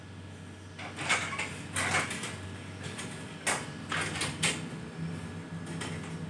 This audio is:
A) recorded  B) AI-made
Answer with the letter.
A